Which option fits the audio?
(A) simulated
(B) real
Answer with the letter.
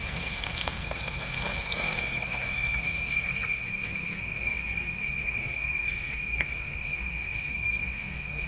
A